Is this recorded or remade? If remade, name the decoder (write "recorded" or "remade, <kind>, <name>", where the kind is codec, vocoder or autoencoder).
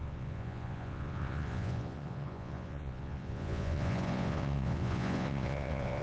remade, vocoder, Vocos